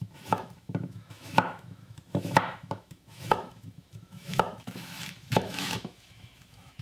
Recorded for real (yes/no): no